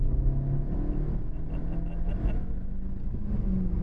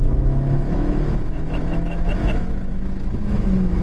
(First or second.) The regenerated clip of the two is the second